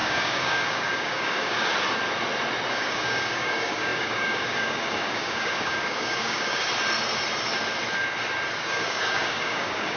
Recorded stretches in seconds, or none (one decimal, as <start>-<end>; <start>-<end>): 1.7-2.7; 6.6-8.6